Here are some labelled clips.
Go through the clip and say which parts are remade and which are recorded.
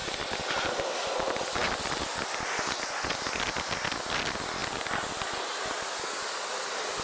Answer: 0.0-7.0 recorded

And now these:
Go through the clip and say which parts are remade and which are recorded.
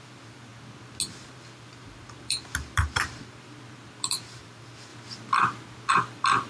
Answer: 0.0-0.5 remade; 0.5-1.2 recorded; 1.2-4.9 remade; 4.9-5.9 recorded; 5.9-6.5 remade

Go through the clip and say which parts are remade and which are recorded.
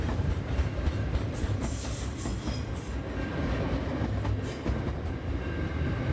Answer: 0.0-2.3 remade; 2.3-6.1 recorded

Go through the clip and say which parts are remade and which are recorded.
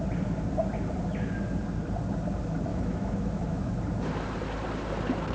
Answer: 0.0-2.7 recorded; 2.7-3.7 remade; 3.7-5.3 recorded